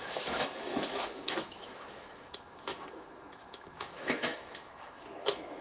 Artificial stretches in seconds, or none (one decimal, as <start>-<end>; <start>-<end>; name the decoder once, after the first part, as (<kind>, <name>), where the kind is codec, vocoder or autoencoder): 0.0-5.6 (autoencoder, DAC-VAE)

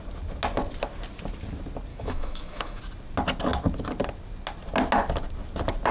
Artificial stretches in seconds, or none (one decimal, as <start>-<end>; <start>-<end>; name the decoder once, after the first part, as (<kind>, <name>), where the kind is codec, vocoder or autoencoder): 1.9-2.8 (autoencoder, DAC-VAE)

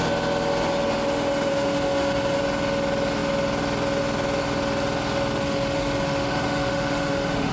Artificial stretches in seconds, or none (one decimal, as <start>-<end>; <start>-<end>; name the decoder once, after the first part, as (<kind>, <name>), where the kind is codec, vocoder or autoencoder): 1.5-2.4 (autoencoder, DAC-VAE); 5.4-7.5

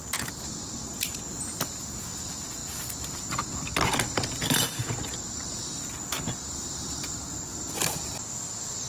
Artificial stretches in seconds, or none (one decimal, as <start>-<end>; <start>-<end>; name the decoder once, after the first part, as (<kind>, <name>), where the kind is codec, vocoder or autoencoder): none

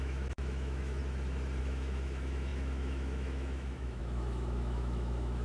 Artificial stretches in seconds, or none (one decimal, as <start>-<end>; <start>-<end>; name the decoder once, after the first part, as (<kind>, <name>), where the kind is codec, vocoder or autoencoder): 0.0-1.0 (autoencoder, DAC-VAE); 1.6-5.4

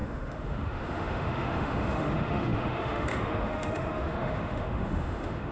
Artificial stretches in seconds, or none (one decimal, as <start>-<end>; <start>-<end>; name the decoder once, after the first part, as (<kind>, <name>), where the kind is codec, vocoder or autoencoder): 0.0-5.5 (autoencoder, DAC-VAE)

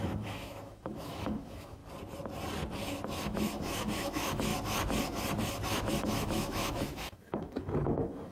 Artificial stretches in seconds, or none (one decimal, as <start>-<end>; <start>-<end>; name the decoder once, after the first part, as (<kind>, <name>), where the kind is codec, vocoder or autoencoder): 0.0-1.8 (autoencoder, DAC-VAE); 3.2-4.5; 6.0-8.3